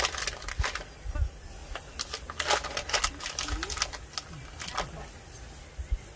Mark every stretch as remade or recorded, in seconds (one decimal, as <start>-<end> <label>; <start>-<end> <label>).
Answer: 0.0-6.2 recorded